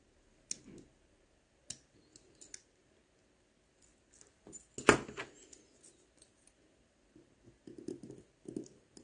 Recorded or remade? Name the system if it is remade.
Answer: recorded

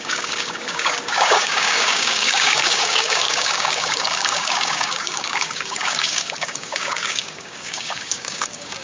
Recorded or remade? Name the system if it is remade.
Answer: remade, codec, DAC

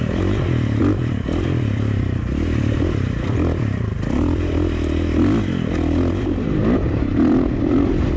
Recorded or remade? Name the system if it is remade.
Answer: remade, vocoder, BigVGAN v2